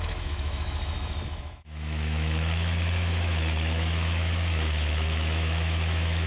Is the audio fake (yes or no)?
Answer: yes